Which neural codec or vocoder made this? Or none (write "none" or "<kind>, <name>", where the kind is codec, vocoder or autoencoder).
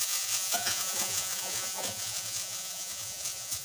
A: vocoder, Vocos